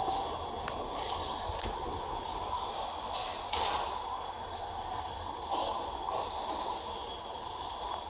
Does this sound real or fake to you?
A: real